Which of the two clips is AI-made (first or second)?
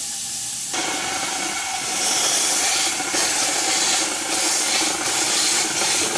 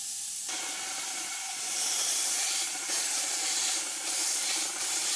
second